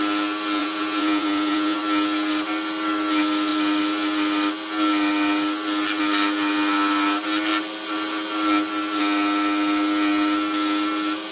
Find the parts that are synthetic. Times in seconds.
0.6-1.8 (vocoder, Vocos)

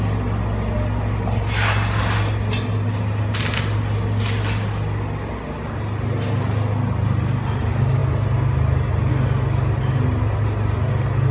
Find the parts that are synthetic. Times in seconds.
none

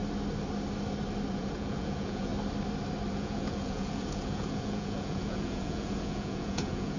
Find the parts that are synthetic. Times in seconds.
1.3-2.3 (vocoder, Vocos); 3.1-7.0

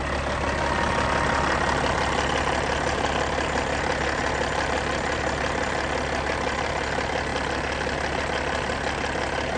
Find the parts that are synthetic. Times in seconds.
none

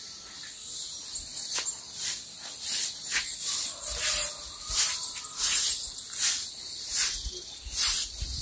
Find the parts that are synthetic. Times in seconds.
4.2-5.0 (vocoder, BigVGAN v2)

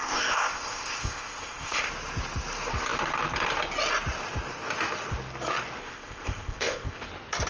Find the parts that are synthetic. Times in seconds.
0.0-1.9 (codec, ZipCodec); 5.8-7.0